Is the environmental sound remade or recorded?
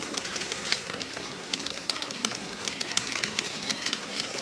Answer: remade